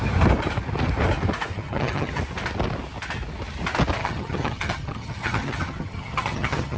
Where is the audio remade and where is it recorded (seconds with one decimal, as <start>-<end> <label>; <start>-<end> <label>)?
0.0-1.5 recorded; 1.5-2.2 remade; 2.2-4.0 recorded; 4.0-6.8 remade